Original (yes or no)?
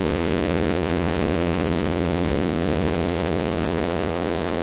no